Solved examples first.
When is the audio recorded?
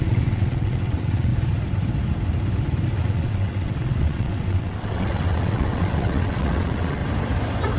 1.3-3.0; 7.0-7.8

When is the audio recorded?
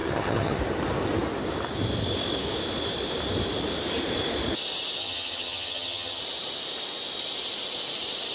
0.6-5.0; 6.2-8.3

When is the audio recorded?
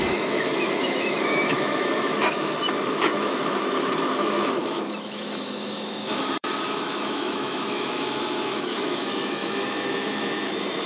none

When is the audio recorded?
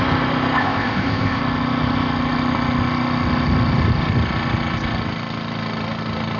0.0-0.6; 1.4-6.4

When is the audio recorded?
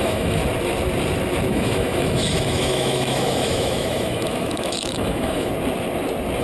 0.4-1.5; 5.5-6.4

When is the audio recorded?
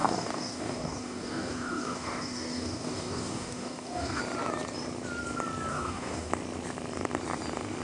4.2-5.7; 6.3-7.8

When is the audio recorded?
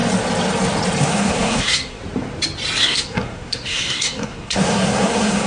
0.0-1.0; 2.0-2.8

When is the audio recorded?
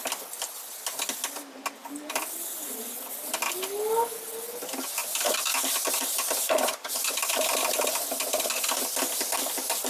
0.0-1.8; 3.2-5.0; 7.3-9.9